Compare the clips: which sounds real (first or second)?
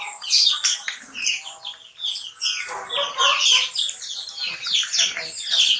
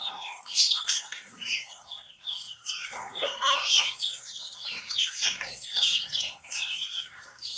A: first